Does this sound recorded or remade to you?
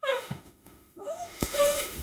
remade